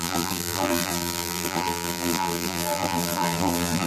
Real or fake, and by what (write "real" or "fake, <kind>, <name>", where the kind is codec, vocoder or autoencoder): fake, vocoder, BigVGAN v2